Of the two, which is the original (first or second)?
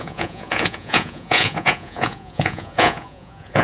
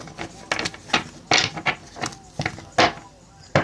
second